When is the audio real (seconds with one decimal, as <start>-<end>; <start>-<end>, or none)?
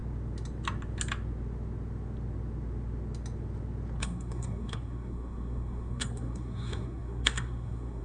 0.0-4.0